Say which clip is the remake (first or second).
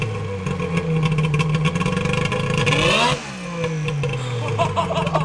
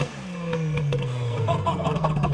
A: second